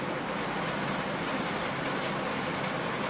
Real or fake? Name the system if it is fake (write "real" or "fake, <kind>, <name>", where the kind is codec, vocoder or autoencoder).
real